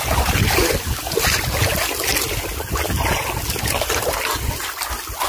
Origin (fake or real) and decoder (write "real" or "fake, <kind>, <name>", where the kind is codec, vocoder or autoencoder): real